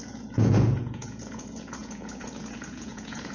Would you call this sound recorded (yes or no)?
no